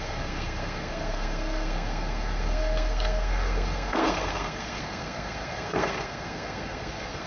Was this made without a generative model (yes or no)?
no